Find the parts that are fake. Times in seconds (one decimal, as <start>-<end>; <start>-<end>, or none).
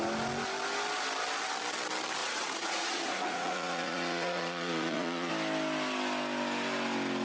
2.2-5.3